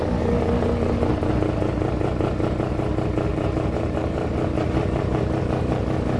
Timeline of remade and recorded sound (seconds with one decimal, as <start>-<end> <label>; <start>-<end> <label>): 0.0-3.3 recorded; 3.3-5.8 remade; 5.8-6.2 recorded